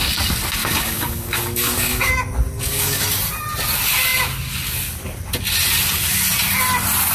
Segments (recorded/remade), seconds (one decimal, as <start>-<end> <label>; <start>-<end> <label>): 0.0-0.6 recorded; 0.6-2.1 remade; 2.1-2.5 recorded; 2.5-3.0 remade; 3.0-7.1 recorded